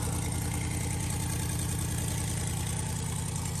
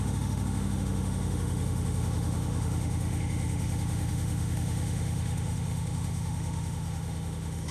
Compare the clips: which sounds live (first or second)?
first